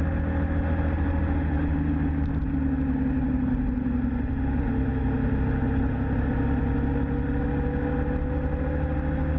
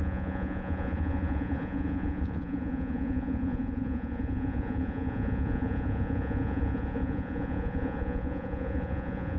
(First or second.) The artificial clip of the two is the second